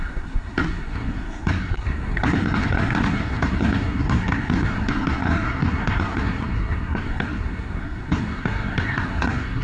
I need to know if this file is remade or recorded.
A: remade